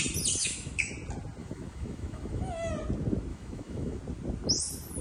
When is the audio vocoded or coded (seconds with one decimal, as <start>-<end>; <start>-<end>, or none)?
0.4-0.9; 1.4-2.7; 3.3-4.0